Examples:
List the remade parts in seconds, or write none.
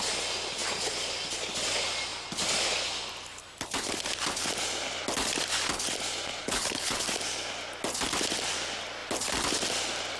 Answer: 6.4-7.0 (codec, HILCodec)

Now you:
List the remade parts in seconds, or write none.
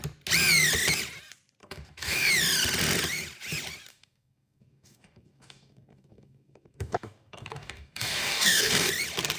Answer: 1.6-2.3 (codec, DAC); 3.9-8.9